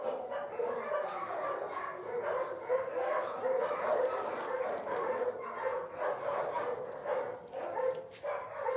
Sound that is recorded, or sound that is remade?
recorded